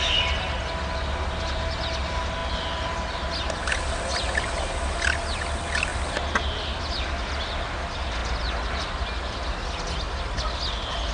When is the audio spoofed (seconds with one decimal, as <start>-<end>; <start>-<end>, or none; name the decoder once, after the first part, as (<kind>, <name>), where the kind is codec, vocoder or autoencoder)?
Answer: none